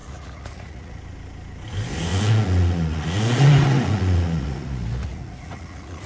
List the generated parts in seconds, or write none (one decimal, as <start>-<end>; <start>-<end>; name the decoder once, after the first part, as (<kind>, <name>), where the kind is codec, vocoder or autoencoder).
0.0-1.0 (vocoder, Vocos); 2.1-6.1

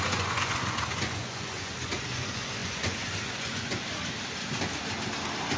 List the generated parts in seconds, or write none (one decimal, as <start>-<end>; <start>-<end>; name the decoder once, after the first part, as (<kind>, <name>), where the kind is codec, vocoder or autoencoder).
0.0-3.9 (vocoder, Vocos)

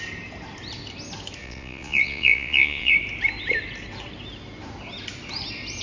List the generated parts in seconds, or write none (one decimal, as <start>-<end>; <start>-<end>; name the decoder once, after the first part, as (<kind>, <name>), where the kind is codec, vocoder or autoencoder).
1.4-2.9 (vocoder, Vocos)

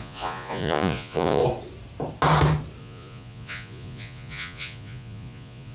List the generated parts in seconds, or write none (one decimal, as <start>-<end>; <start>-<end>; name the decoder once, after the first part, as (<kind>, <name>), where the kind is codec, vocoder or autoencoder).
0.0-1.4 (vocoder, Vocos); 2.8-5.7